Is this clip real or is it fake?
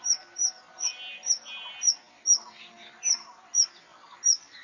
real